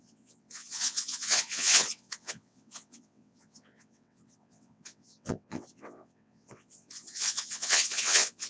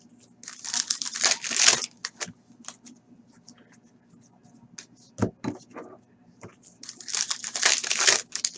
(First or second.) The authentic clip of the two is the second